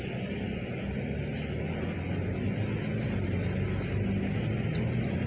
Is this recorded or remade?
recorded